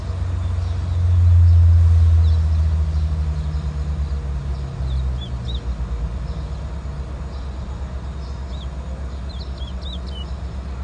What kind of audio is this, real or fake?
real